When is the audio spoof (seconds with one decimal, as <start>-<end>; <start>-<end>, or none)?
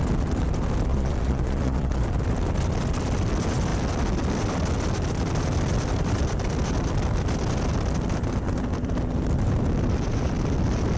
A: 0.9-2.0